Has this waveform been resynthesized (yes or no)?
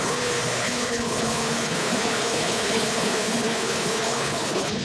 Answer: yes